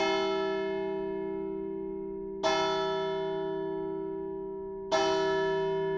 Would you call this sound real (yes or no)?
yes